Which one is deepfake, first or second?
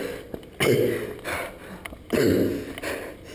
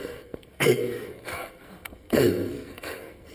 second